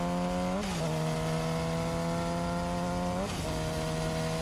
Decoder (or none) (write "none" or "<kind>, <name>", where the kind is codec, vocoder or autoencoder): none